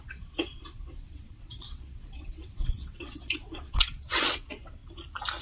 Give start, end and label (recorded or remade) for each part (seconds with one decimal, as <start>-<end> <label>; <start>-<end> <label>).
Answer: 0.0-4.8 remade; 4.8-5.4 recorded